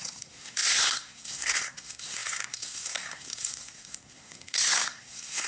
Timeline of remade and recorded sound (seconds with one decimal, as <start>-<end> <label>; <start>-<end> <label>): 0.0-5.5 remade